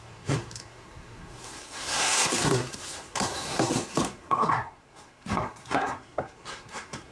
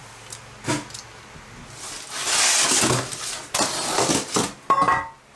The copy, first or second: first